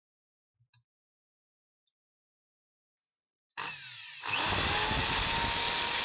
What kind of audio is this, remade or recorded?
recorded